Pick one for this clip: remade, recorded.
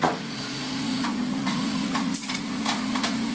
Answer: remade